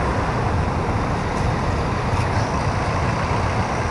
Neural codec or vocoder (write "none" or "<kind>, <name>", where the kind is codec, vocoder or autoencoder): none